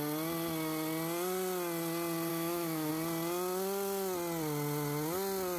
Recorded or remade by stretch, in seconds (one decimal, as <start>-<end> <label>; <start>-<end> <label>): 0.0-2.3 recorded; 2.3-2.9 remade; 2.9-5.6 recorded